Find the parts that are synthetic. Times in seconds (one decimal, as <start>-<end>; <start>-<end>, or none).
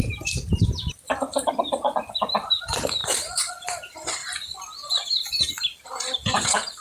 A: 0.0-6.8